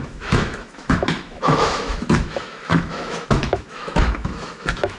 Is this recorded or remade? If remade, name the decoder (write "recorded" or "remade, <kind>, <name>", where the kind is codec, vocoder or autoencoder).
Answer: remade, autoencoder, DAC-VAE